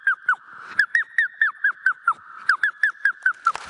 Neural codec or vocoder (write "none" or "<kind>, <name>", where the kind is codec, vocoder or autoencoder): none